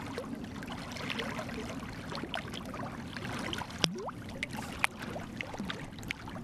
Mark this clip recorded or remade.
recorded